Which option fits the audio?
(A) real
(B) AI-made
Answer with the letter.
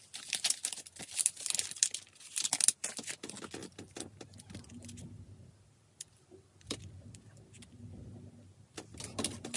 A